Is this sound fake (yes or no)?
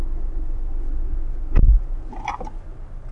no